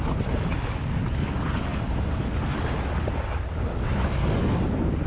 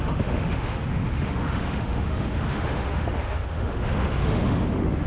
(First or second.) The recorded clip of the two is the first